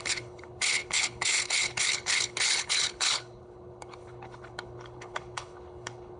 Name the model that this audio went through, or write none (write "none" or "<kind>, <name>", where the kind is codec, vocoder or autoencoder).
codec, HILCodec